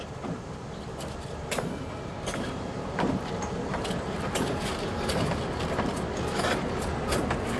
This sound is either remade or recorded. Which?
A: recorded